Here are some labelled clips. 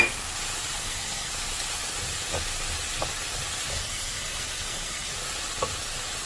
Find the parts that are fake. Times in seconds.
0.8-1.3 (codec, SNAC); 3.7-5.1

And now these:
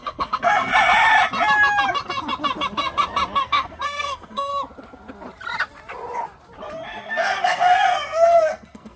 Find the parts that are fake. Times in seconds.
0.0-0.7 (codec, SNAC); 3.4-4.5; 7.1-9.0

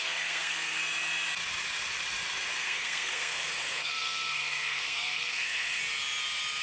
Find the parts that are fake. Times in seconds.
0.0-0.8 (codec, SNAC); 2.6-5.8

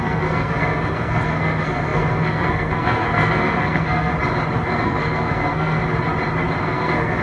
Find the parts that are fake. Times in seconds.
0.0-4.1 (codec, SNAC); 4.7-5.8; 6.6-7.2

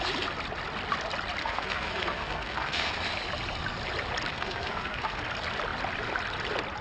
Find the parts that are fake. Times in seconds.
1.4-2.9 (codec, SNAC); 4.3-5.2